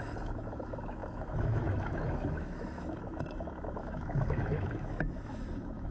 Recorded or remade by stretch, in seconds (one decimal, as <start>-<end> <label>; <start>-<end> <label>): 0.0-5.9 remade